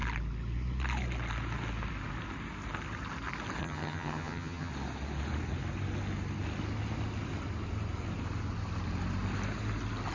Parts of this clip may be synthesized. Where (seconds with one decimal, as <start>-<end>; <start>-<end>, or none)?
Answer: 3.6-4.7